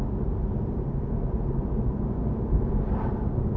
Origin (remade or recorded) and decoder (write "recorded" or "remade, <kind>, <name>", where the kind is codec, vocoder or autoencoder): recorded